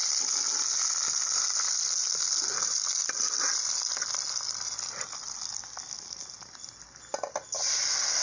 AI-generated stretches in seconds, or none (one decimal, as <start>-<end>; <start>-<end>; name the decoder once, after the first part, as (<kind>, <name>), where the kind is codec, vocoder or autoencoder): none